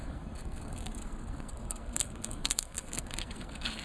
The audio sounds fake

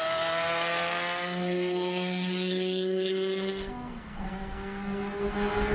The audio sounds fake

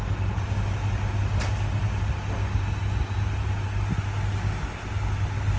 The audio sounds real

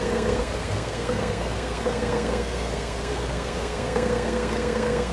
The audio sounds fake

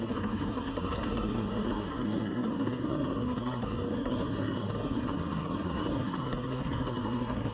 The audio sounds fake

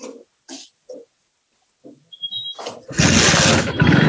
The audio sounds real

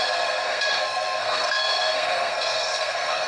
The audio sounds fake